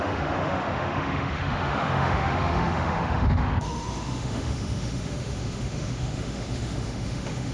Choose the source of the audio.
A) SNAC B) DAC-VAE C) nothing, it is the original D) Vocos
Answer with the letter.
B